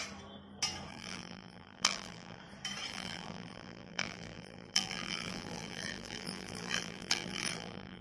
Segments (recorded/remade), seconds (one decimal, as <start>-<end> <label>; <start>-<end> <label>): 0.0-0.9 recorded; 0.9-2.4 remade; 2.4-2.9 recorded; 2.9-8.0 remade